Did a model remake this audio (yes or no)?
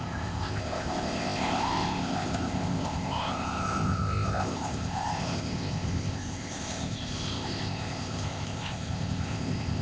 yes